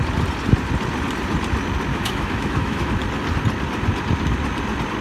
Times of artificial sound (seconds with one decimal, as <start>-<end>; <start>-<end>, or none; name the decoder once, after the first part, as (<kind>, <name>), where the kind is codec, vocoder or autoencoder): 1.9-2.9 (autoencoder, DAC-VAE)